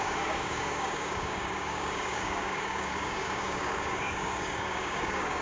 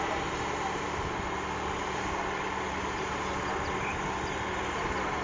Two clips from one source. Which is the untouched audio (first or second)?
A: second